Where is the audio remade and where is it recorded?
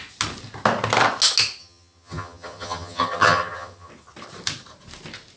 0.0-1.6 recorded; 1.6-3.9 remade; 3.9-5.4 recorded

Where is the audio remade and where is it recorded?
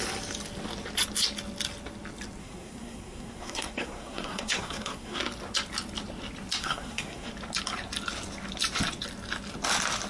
0.0-2.4 recorded; 2.4-5.2 remade; 5.2-6.6 recorded; 6.6-7.3 remade; 7.3-10.1 recorded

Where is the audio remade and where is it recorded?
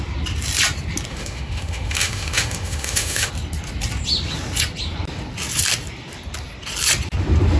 0.0-1.1 recorded; 1.1-3.3 remade; 3.3-7.6 recorded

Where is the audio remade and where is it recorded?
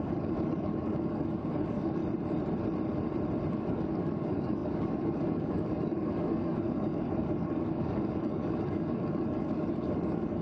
0.0-2.0 remade; 2.0-3.5 recorded; 3.5-10.4 remade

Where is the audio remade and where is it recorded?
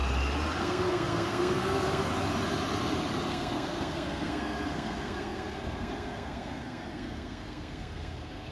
0.0-0.6 recorded; 0.6-2.1 remade; 2.1-3.3 recorded; 3.3-8.5 remade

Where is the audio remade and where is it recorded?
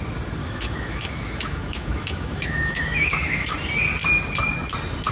0.0-0.4 recorded; 0.4-3.5 remade; 3.5-5.1 recorded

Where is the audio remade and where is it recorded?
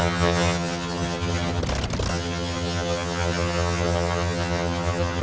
0.0-1.6 remade; 1.6-2.1 recorded; 2.1-5.2 remade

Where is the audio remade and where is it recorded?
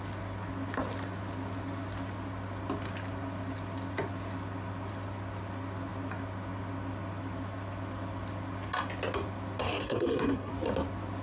0.0-9.6 recorded; 9.6-10.5 remade; 10.5-11.2 recorded